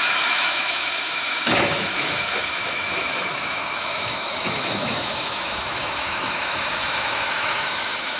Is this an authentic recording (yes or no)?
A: no